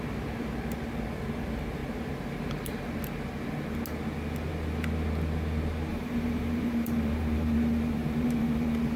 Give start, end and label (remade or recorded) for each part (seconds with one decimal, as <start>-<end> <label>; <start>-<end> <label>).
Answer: 0.0-5.9 recorded; 5.9-9.0 remade